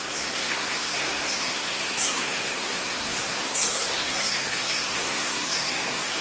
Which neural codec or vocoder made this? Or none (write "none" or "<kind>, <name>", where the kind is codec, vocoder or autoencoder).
codec, SNAC